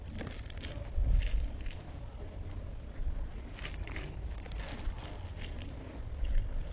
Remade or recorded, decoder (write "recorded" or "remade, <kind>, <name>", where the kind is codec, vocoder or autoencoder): recorded